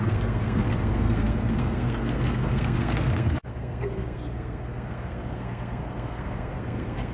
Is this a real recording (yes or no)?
no